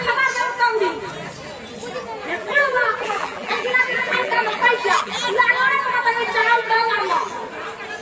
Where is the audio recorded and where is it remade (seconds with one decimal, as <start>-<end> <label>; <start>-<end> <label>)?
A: 0.0-2.4 recorded; 2.4-5.5 remade; 5.5-6.4 recorded; 6.4-7.3 remade; 7.3-8.0 recorded